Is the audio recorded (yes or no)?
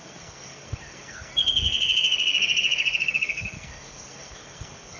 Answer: no